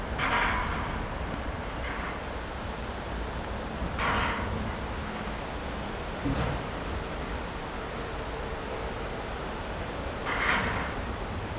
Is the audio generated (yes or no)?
no